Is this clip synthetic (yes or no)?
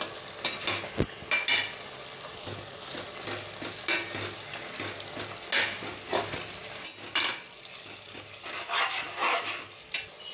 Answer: no